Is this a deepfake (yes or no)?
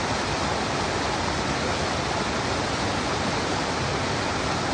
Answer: no